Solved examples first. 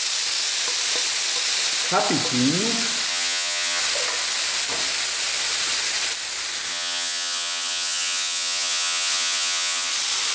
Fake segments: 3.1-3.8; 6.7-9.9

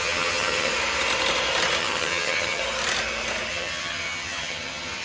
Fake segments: 0.0-0.7; 1.8-2.6; 3.5-5.0

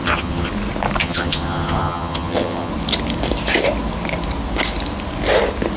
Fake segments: 0.0-0.5; 1.0-2.7

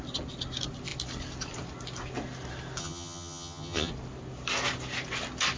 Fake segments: 2.8-3.9

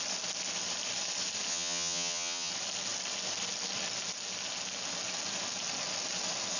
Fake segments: 1.5-2.5

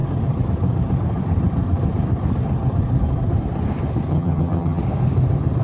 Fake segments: 4.1-4.8

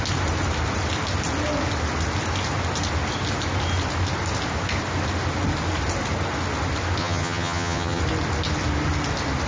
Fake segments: 7.0-8.0

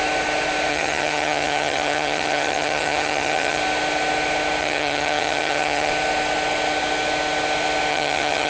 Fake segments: 0.7-3.6; 4.6-5.9; 7.9-8.5